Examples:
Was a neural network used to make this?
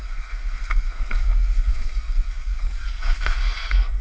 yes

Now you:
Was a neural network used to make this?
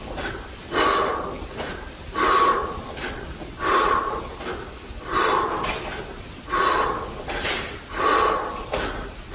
no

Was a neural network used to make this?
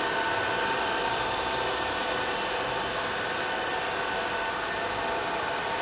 no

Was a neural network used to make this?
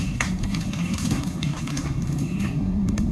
yes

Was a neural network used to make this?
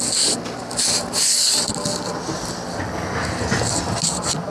no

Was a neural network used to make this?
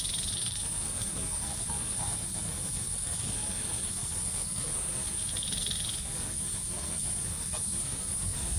yes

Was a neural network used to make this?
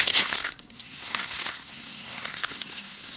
yes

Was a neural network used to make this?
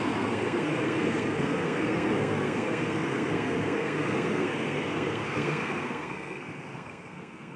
yes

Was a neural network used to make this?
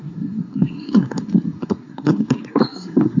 yes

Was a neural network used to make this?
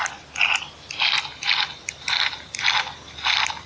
no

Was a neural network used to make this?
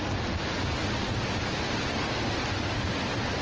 no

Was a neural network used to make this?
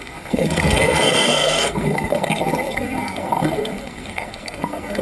yes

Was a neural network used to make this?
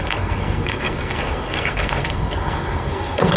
yes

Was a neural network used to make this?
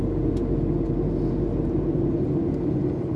no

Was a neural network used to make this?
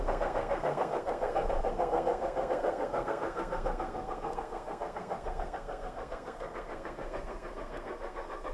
yes